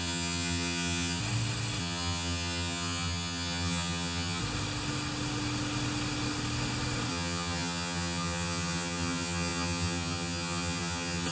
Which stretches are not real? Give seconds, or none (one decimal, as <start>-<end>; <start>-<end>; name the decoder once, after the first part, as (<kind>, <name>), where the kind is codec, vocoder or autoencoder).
0.0-1.2 (vocoder, HiFi-GAN); 1.8-4.4; 7.1-11.3